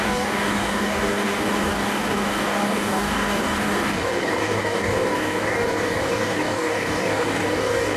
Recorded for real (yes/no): no